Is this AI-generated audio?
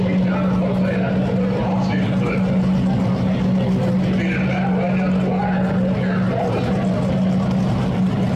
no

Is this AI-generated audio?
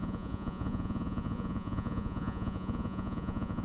yes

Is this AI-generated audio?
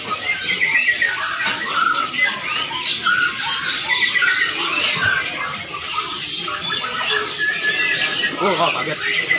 no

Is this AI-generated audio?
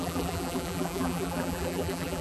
yes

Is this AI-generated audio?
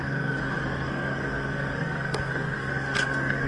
yes